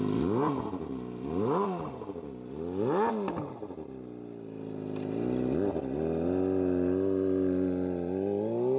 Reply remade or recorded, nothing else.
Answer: recorded